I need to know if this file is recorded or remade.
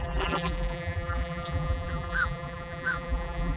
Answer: remade